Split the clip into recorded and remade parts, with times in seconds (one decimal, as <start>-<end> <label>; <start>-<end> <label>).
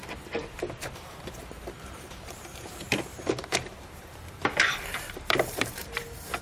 0.0-0.9 recorded; 0.9-6.4 remade